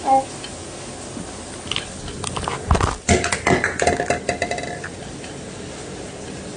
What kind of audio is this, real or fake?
real